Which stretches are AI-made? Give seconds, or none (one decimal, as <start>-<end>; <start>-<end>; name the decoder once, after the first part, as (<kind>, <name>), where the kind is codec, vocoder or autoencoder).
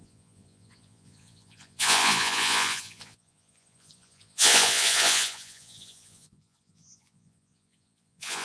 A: 0.0-8.4 (vocoder, Vocos)